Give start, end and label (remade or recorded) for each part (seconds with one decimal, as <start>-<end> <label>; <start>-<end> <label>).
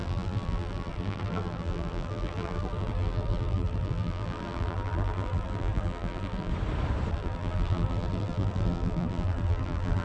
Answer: 0.0-6.5 remade; 6.5-7.1 recorded; 7.1-10.0 remade